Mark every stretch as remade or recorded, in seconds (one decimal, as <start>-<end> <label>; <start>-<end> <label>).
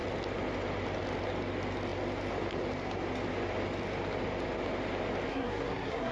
0.0-5.3 recorded; 5.3-6.1 remade